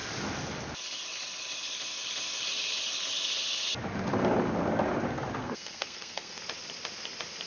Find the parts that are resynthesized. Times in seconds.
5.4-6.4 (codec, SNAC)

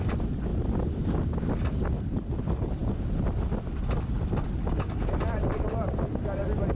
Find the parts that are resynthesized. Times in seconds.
none

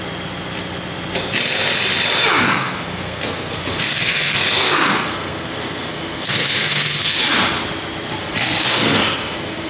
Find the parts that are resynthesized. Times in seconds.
2.4-7.2 (codec, SNAC); 8.2-9.7

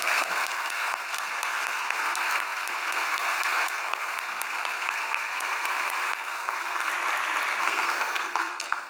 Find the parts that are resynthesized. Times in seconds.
0.0-6.9 (codec, SNAC); 7.6-8.9

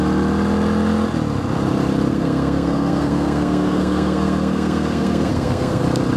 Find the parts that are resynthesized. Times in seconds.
2.1-5.8 (codec, SNAC)

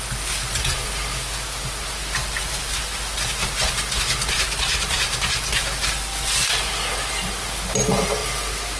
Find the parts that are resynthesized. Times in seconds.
none

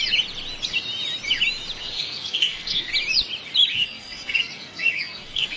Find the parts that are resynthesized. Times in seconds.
1.8-2.9 (codec, SNAC); 3.7-5.6